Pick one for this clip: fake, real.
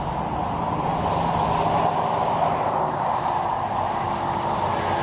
real